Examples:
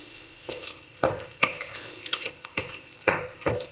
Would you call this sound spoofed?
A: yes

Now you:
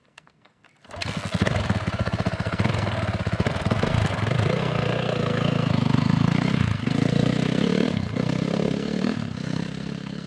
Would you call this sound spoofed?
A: yes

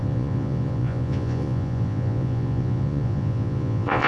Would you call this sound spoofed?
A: yes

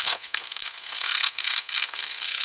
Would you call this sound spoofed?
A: yes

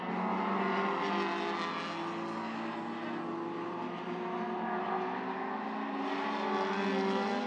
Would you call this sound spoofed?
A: no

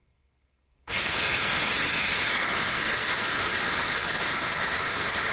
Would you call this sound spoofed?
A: yes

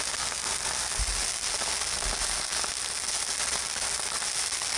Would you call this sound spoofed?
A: no